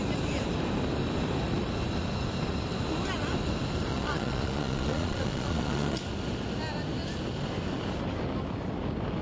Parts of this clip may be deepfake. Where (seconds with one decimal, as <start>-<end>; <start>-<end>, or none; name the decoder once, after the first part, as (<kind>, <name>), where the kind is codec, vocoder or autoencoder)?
3.9-6.0 (vocoder, Vocos)